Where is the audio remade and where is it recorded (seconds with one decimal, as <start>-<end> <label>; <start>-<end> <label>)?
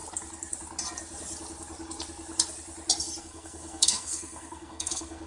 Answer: 0.0-3.2 recorded; 3.2-5.3 remade